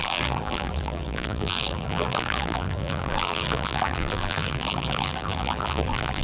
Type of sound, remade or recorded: remade